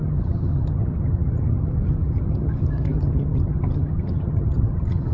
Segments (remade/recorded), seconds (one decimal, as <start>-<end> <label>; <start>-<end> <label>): 0.0-5.1 remade